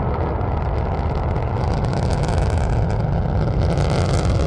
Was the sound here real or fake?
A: real